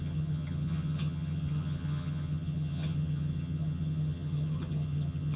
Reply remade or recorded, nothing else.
remade